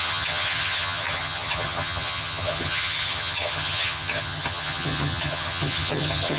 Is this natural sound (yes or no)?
no